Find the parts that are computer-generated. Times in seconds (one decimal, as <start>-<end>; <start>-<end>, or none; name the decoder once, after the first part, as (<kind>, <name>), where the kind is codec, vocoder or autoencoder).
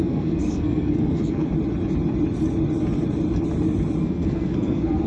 0.0-1.5 (codec, SNAC); 4.0-5.1